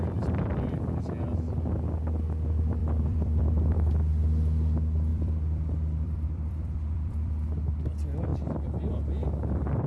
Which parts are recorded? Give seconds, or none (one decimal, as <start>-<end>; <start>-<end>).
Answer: 0.0-2.8; 3.9-5.1; 7.7-8.3; 8.9-9.9